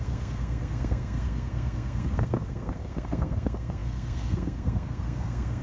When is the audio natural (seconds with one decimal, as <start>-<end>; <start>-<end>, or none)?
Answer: none